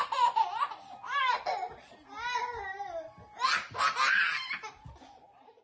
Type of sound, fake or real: real